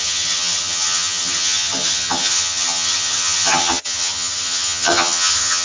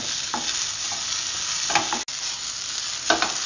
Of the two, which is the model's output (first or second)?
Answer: first